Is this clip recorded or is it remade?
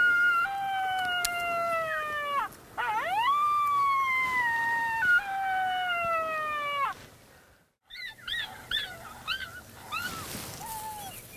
recorded